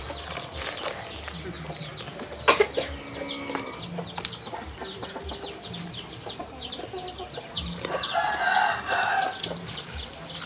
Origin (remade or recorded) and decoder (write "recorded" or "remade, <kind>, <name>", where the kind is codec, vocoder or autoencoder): recorded